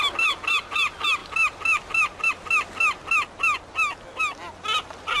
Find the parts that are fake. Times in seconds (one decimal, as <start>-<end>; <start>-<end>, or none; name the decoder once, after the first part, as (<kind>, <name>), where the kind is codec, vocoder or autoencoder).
none